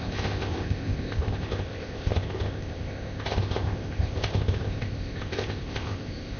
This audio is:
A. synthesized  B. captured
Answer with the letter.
A